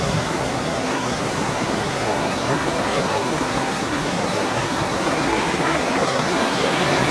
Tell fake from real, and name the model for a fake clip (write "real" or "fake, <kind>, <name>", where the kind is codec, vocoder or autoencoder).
fake, codec, SNAC